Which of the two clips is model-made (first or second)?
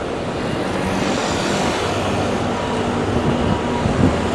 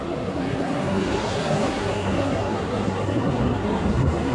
second